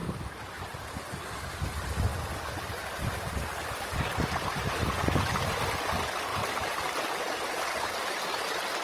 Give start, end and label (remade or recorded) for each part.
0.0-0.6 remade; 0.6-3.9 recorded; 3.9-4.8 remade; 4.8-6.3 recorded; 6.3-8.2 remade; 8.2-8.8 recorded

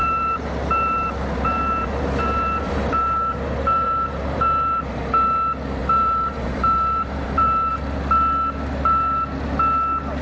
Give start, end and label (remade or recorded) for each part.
0.0-5.0 remade; 5.0-5.8 recorded; 5.8-7.7 remade; 7.7-10.2 recorded

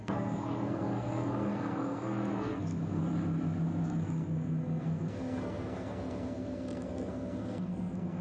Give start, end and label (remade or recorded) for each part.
0.0-3.0 remade; 3.0-3.8 recorded; 3.8-8.2 remade

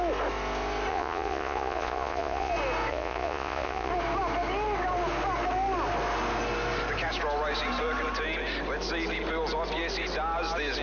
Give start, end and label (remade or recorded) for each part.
0.0-0.9 recorded; 0.9-2.5 remade; 2.5-2.9 recorded; 2.9-3.9 remade; 3.9-10.8 recorded

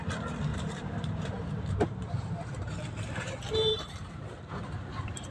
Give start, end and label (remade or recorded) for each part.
0.0-0.5 recorded; 0.5-3.3 remade; 3.3-3.7 recorded; 3.7-4.5 remade; 4.5-5.3 recorded

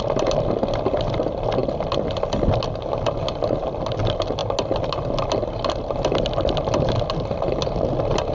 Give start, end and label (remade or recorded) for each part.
0.0-8.3 recorded